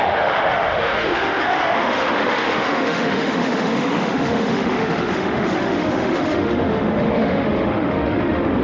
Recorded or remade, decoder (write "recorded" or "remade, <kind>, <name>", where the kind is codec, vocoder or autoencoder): remade, autoencoder, DAC-VAE